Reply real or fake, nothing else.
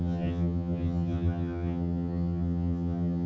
fake